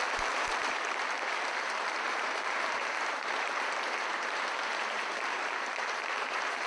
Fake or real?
fake